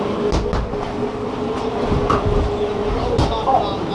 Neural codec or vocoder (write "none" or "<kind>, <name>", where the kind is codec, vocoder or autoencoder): none